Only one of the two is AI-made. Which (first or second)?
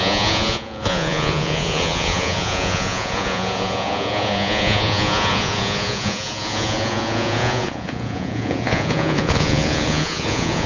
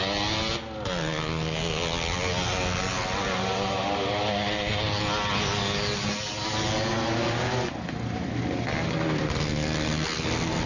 first